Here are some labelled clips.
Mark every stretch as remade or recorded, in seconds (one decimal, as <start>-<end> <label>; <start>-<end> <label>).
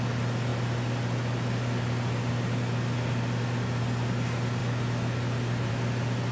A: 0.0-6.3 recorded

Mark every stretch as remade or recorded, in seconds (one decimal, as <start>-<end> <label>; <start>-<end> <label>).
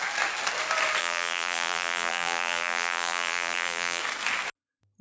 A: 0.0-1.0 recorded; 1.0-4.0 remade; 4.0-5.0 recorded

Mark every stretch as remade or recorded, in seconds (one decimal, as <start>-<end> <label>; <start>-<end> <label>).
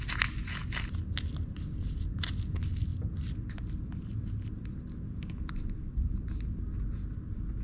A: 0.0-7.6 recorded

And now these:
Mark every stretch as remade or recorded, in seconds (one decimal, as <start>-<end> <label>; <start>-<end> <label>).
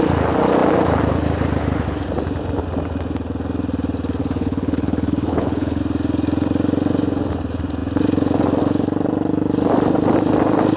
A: 0.0-4.2 recorded; 4.2-5.8 remade; 5.8-10.8 recorded